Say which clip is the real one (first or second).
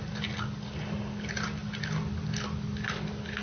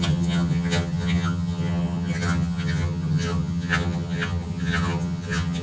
first